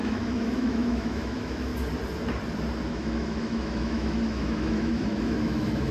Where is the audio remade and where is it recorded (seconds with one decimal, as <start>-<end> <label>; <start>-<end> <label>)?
0.0-1.7 remade; 1.7-2.9 recorded; 2.9-5.9 remade